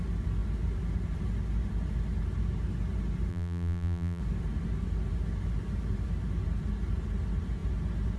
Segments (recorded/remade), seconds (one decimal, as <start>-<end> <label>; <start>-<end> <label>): 0.0-3.3 recorded; 3.3-4.2 remade; 4.2-8.2 recorded